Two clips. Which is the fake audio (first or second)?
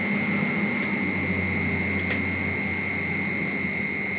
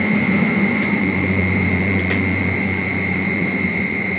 second